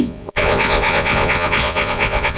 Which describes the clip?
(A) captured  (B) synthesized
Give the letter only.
B